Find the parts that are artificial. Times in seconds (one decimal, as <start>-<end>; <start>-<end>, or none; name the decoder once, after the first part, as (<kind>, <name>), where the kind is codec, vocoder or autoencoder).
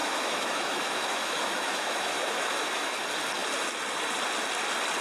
0.0-3.0 (autoencoder, DAC-VAE)